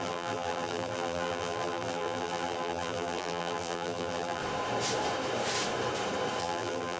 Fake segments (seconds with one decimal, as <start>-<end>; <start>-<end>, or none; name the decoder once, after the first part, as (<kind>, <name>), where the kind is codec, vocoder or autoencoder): 0.0-4.4 (vocoder, BigVGAN v2); 6.4-7.0